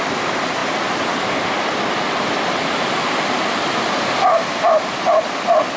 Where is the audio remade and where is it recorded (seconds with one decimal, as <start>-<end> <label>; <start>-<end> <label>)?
0.0-0.6 recorded; 0.6-4.1 remade; 4.1-5.8 recorded

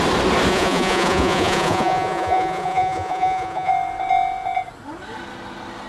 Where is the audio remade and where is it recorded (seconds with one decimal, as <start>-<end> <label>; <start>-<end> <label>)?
0.0-0.5 recorded; 0.5-3.7 remade; 3.7-5.9 recorded